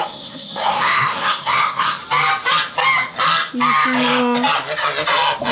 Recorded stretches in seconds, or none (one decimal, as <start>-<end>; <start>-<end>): 2.0-5.5